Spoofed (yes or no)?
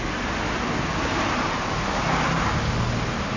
no